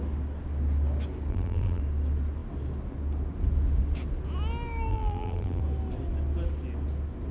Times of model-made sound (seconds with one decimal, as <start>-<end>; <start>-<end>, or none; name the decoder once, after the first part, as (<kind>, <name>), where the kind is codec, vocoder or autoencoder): 1.3-1.8 (vocoder, BigVGAN v2); 4.9-5.6